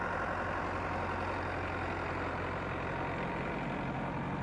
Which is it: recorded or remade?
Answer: recorded